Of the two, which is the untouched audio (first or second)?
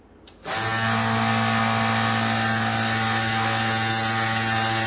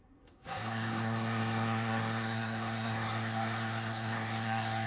first